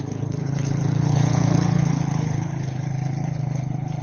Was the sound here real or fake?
fake